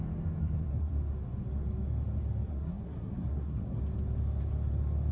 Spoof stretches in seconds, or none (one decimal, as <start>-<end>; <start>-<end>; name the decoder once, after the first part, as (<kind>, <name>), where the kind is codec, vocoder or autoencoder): 0.4-0.9 (codec, SNAC); 2.5-3.8